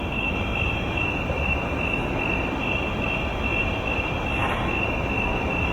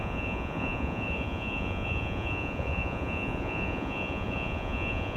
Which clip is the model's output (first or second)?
second